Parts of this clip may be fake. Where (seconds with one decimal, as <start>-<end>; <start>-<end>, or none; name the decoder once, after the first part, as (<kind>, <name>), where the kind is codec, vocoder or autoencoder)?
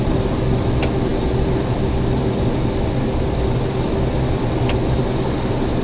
none